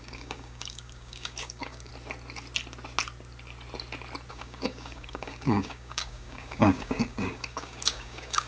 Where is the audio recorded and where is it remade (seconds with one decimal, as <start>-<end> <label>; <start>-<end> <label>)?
0.0-1.9 remade; 1.9-4.3 recorded; 4.3-8.5 remade